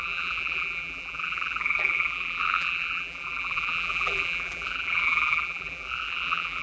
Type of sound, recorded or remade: remade